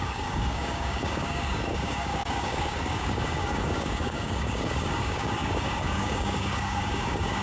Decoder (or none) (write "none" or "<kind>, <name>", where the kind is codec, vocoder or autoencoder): codec, DAC